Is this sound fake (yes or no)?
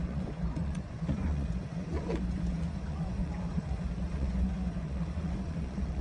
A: yes